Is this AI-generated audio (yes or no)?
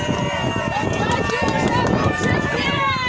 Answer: no